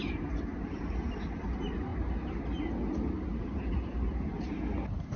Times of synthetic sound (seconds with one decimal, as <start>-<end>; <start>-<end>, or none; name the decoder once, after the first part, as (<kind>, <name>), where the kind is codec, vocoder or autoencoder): none